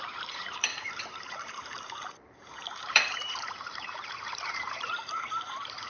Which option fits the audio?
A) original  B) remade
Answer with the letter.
B